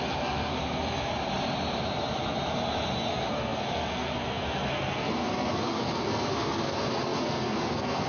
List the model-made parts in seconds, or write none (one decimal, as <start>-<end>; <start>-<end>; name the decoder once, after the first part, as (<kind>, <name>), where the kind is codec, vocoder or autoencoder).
0.0-1.1 (codec, SNAC); 3.1-8.1